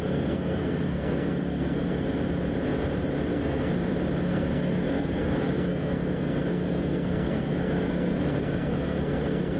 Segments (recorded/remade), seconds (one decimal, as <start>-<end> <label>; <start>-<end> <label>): 0.0-2.1 remade; 2.1-3.3 recorded; 3.3-3.7 remade; 3.7-4.2 recorded; 4.2-9.6 remade